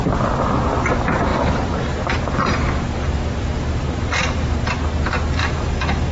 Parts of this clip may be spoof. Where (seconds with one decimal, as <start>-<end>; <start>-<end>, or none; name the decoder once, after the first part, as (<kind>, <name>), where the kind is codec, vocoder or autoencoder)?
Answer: 5.4-6.1 (autoencoder, DAC-VAE)